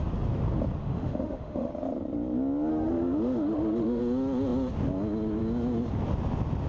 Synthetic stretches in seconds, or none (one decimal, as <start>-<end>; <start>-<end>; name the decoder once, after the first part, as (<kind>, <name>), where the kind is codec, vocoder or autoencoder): 0.8-1.7 (autoencoder, DAC-VAE); 2.7-4.0